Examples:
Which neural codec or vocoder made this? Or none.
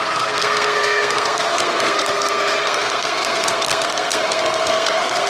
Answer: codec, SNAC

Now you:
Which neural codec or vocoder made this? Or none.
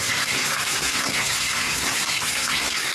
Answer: codec, SNAC